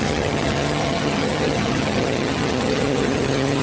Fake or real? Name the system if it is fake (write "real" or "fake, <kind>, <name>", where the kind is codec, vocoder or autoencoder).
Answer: fake, vocoder, HiFi-GAN